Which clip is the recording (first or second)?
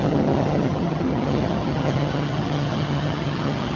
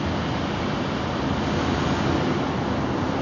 second